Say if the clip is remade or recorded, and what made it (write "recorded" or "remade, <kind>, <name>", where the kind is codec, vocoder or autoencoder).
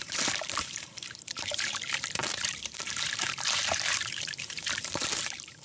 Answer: remade, vocoder, BigVGAN v2